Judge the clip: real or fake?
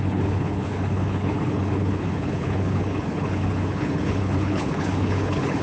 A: fake